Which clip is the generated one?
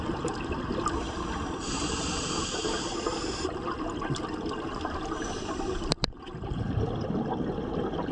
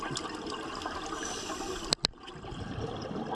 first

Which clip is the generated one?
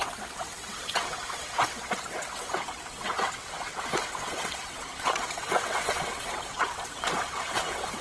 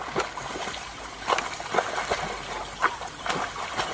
first